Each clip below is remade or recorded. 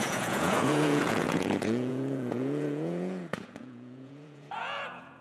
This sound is remade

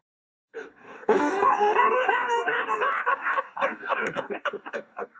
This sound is remade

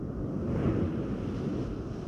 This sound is recorded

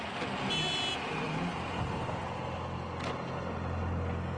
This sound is recorded